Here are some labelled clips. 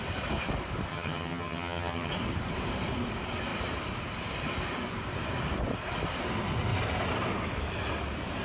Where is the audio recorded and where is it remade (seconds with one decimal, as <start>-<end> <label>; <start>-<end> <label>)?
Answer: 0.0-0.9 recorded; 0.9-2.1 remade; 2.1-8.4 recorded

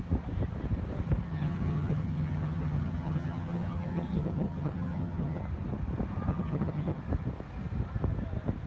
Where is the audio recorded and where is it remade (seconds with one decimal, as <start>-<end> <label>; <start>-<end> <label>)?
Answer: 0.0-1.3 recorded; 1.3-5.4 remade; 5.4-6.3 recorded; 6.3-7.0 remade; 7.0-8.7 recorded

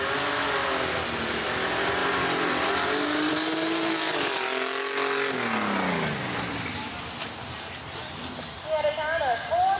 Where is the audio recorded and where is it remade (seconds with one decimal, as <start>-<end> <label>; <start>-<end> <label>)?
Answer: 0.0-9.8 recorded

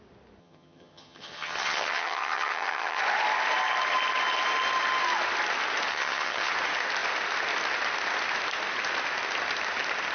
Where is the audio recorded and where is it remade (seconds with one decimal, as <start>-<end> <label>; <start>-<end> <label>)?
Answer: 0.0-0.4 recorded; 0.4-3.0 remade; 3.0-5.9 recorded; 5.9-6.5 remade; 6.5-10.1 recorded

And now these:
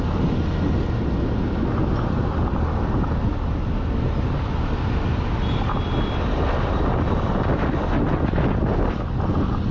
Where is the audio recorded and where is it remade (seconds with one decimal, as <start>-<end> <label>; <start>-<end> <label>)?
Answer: 0.0-9.7 recorded